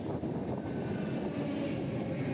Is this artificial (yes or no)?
no